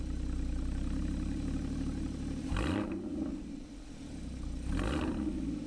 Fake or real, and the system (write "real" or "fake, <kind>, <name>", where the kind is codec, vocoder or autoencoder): real